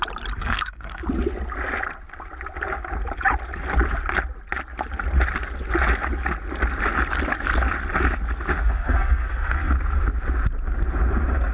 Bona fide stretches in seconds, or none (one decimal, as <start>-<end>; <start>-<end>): 0.0-0.4; 1.0-8.6; 9.7-11.5